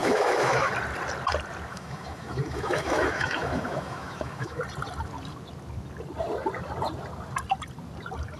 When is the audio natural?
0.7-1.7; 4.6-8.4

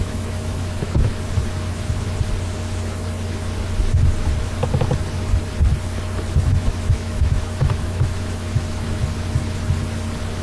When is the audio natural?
1.1-6.5; 9.0-10.4

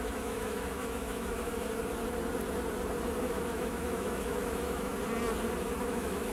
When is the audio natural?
1.5-3.2; 4.9-5.8

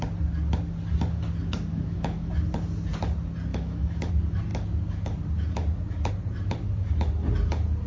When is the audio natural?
0.0-1.7; 2.3-3.5; 4.1-7.9

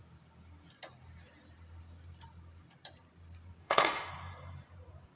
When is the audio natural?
0.0-3.6; 4.1-5.2

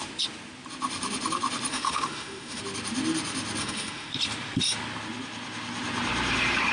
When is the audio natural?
0.0-1.7; 2.6-3.6; 4.1-6.7